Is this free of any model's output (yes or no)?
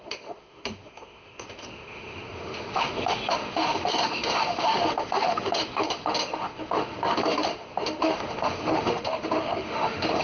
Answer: no